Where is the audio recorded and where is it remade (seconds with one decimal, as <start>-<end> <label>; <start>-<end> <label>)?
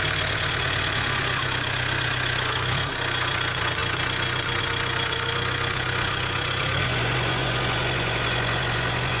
0.0-9.2 remade